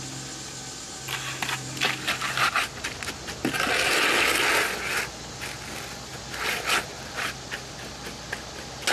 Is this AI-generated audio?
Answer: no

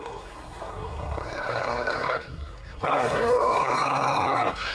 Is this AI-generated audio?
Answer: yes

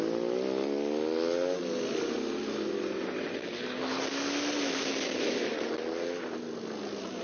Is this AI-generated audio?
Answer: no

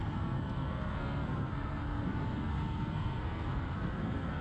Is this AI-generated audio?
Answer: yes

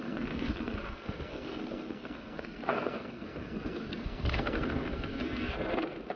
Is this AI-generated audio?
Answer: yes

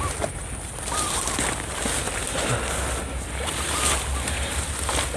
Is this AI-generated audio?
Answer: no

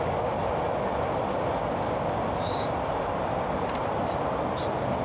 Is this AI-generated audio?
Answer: no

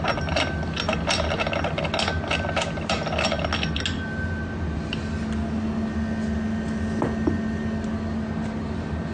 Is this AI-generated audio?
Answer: no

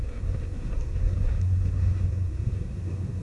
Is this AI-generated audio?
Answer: yes